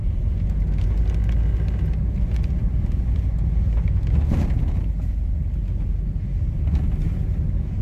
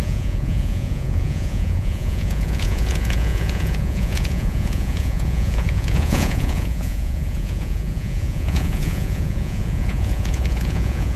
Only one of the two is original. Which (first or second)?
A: first